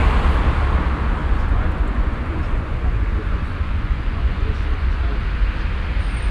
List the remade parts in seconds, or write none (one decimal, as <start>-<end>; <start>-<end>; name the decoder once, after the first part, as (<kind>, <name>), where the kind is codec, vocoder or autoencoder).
1.2-5.0 (vocoder, Vocos)